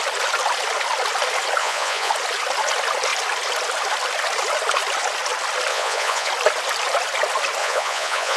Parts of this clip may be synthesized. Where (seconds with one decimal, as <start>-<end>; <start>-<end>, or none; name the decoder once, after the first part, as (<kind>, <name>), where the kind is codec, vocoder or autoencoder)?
1.6-2.1 (vocoder, Vocos); 5.7-6.3; 7.6-8.4